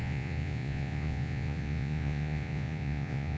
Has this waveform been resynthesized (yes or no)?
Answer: yes